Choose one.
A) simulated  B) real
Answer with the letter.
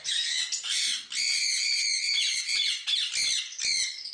B